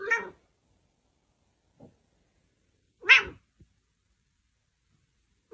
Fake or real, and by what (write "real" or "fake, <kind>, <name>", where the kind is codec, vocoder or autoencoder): real